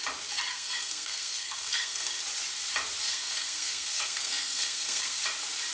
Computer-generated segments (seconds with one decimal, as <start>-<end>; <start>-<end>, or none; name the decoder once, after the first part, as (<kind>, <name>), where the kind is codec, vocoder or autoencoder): 0.5-2.1 (codec, SNAC); 3.0-5.2